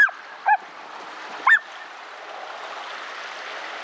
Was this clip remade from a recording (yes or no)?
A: no